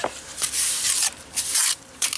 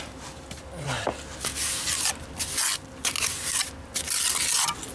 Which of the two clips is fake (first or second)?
first